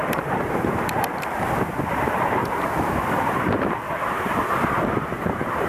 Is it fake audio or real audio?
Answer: fake